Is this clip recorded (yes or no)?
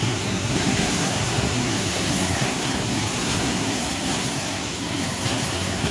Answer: no